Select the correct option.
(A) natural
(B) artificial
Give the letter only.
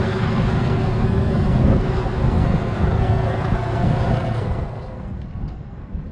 B